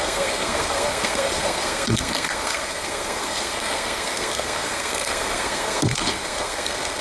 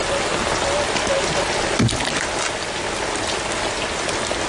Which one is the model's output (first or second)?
first